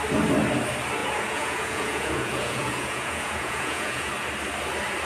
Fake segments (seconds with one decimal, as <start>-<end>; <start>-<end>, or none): 1.0-4.1